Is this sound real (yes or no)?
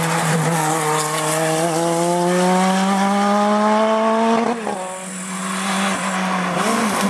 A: yes